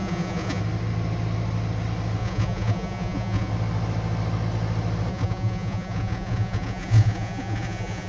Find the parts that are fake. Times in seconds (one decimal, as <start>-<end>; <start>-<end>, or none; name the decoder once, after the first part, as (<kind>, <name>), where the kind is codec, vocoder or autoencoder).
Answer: 0.0-0.6 (vocoder, Vocos); 2.2-3.5; 5.1-8.1